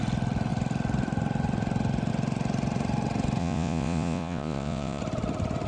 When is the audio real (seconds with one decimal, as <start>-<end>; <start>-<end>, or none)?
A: 0.0-3.4; 5.0-5.7